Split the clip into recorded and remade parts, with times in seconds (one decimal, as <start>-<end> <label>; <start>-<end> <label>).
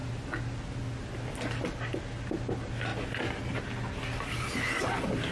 0.0-5.3 recorded